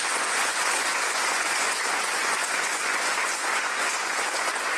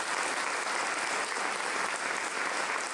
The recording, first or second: second